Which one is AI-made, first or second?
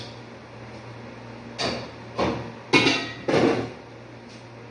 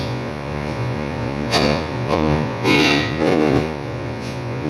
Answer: second